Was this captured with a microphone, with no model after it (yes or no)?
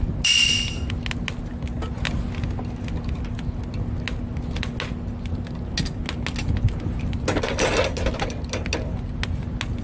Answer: yes